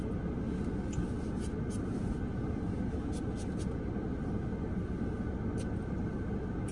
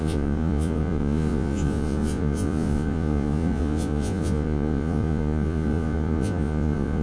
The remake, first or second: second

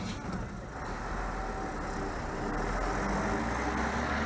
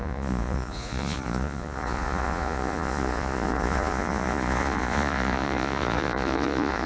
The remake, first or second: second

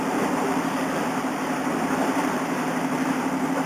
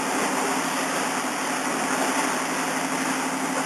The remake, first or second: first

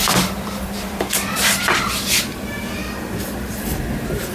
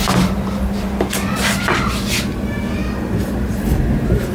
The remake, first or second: first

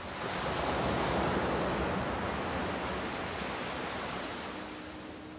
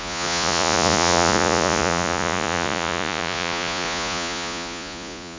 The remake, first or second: second